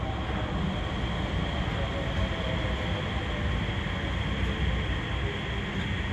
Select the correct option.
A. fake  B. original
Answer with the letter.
B